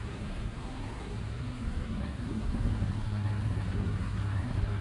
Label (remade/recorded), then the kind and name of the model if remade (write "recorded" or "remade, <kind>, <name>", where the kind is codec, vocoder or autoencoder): remade, codec, SNAC